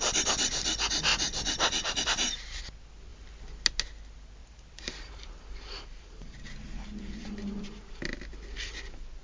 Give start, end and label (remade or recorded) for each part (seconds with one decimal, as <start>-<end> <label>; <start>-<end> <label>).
0.0-1.1 recorded; 1.1-2.6 remade; 2.6-4.4 recorded; 4.4-8.0 remade; 8.0-9.2 recorded